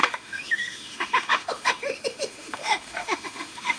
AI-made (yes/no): yes